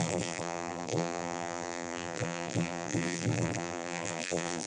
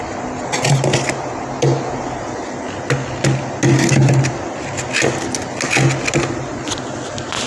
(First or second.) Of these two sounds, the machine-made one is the first